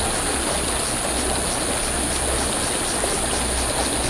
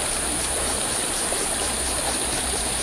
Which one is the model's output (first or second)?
second